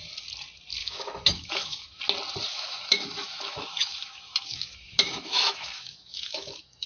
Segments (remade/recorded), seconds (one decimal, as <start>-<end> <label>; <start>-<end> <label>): 0.0-0.8 recorded; 0.8-2.0 remade; 2.0-2.5 recorded; 2.5-6.9 remade